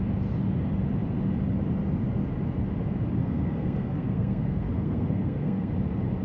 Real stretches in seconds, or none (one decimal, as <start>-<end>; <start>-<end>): 0.0-3.2; 5.7-6.2